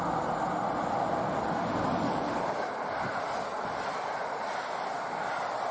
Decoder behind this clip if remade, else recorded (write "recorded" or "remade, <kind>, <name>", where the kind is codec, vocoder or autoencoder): recorded